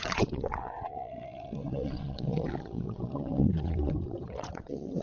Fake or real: fake